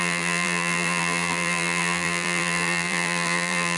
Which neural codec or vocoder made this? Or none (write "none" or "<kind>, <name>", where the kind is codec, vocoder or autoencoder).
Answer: vocoder, BigVGAN v2